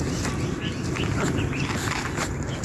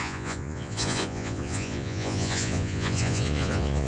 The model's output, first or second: second